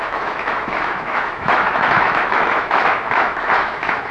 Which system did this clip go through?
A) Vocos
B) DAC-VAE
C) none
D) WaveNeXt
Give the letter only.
B